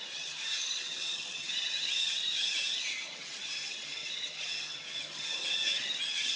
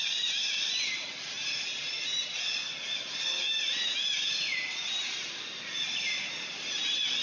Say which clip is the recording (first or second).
second